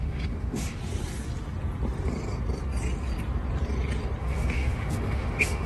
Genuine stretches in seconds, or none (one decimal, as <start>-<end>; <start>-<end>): 0.8-4.2